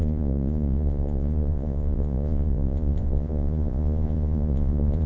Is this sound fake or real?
fake